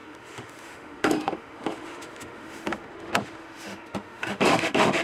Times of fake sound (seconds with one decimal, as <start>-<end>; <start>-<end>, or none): 0.0-5.0